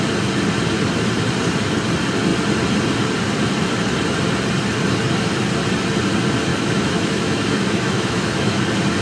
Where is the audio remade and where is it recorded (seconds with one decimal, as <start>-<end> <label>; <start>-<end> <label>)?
0.0-6.5 recorded; 6.5-8.6 remade; 8.6-9.0 recorded